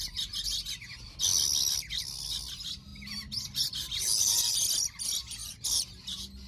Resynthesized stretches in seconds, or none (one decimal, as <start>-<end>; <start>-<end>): 5.4-5.9